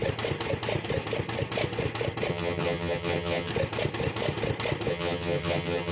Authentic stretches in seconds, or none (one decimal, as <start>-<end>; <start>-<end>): 0.0-2.3; 3.5-4.9